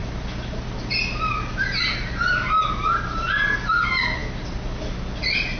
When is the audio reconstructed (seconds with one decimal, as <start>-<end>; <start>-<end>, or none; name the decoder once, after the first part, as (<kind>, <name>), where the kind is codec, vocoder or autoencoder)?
none